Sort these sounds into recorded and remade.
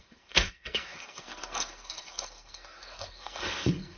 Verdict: remade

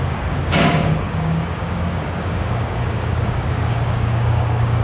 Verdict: remade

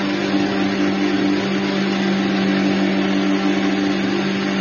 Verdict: recorded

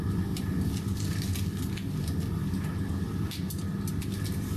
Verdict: recorded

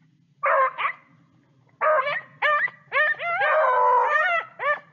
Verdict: recorded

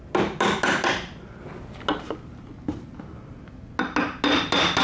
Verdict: recorded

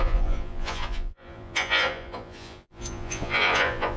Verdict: remade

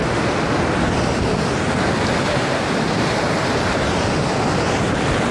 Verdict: recorded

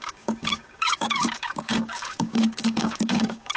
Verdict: remade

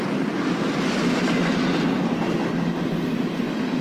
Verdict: recorded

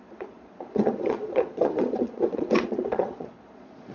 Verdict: remade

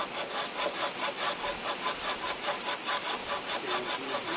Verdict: recorded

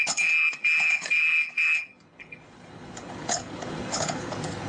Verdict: remade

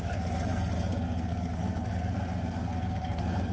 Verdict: remade